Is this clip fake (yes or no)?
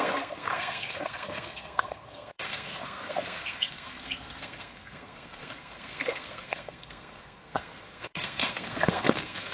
yes